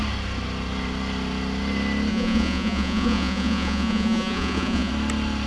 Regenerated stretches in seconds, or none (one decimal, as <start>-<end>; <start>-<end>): 2.1-4.9